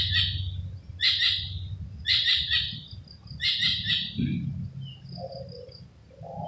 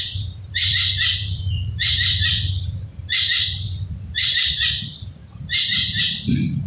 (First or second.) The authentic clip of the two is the first